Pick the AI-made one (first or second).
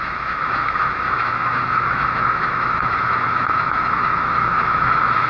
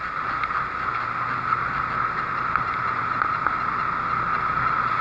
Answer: first